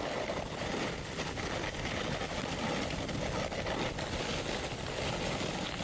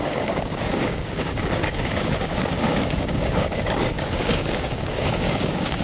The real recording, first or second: first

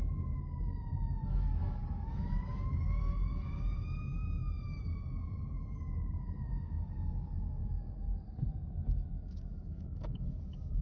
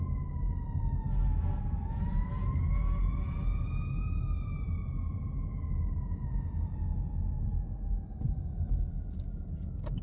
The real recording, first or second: second